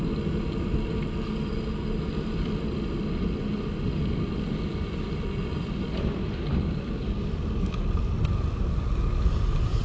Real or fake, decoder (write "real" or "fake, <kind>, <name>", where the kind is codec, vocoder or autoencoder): real